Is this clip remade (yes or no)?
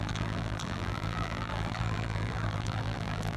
yes